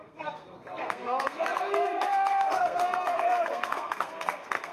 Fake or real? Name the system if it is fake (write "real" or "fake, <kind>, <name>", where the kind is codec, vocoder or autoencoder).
fake, codec, SNAC